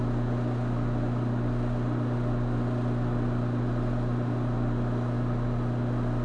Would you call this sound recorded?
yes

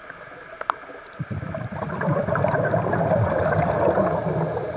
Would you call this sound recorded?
yes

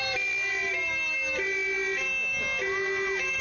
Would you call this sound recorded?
yes